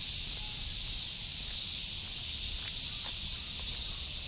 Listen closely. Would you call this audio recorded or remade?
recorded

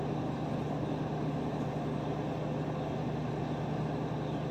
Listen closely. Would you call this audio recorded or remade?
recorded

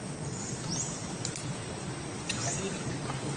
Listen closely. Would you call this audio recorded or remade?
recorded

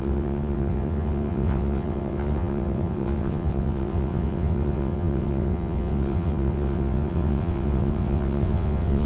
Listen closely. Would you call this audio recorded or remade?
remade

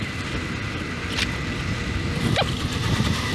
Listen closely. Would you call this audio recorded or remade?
recorded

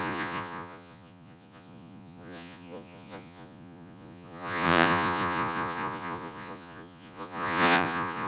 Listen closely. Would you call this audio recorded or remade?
remade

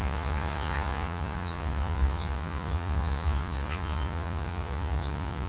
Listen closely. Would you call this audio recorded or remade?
remade